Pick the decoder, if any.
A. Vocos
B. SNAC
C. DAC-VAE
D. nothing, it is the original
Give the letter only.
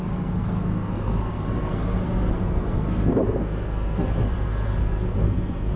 B